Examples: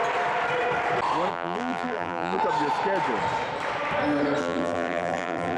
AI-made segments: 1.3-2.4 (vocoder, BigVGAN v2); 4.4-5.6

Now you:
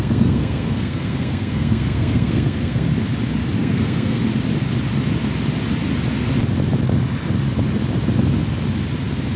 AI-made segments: 0.0-2.9 (codec, SNAC); 3.6-4.2

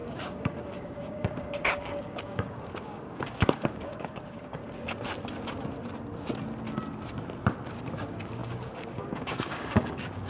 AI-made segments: 0.0-4.6 (codec, DAC); 7.8-10.3

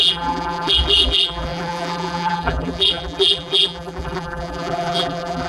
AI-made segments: 0.0-5.5 (vocoder, BigVGAN v2)

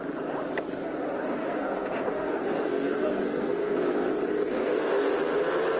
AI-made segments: 1.2-4.1 (codec, SNAC); 4.5-5.1